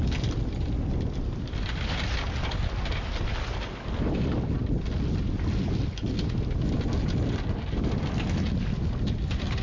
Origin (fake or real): real